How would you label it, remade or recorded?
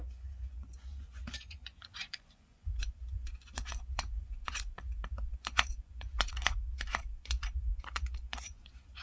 remade